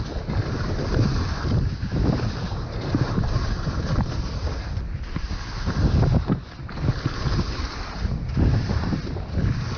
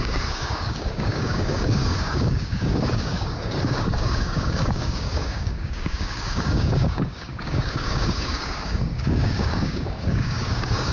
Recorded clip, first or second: first